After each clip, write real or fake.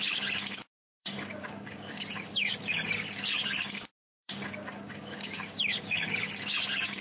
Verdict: fake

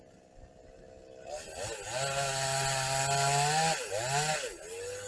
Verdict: real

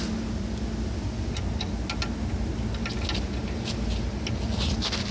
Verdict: real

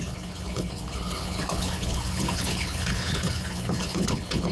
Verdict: fake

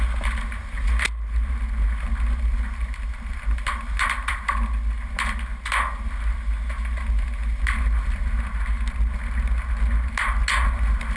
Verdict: real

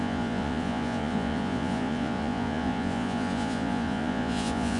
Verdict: fake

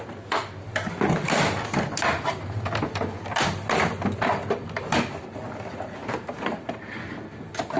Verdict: real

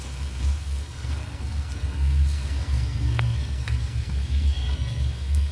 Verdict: fake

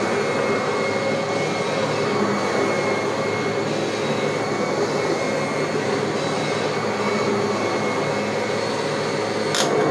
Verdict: real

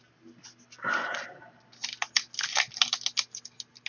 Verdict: real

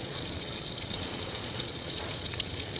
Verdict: fake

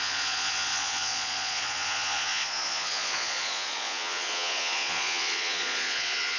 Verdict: fake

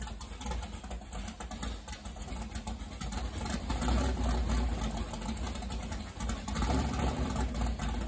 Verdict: real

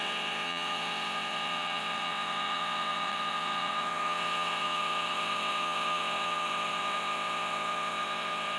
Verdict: fake